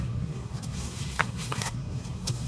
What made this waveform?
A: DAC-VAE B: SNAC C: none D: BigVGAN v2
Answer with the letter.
B